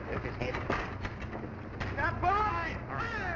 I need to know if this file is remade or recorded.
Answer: recorded